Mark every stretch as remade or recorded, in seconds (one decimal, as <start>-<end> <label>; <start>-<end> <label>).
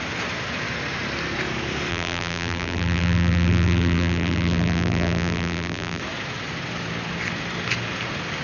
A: 0.0-1.9 recorded; 1.9-6.0 remade; 6.0-8.4 recorded